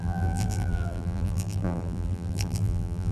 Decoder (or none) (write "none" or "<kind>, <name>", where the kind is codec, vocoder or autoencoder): vocoder, BigVGAN v2